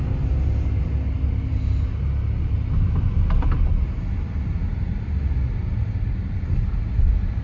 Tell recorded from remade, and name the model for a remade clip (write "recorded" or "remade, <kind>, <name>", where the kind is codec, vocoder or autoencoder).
recorded